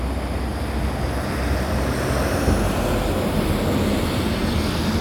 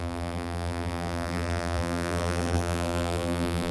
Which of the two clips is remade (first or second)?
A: second